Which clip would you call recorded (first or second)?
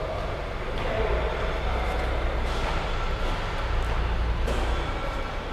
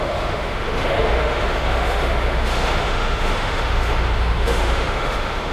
first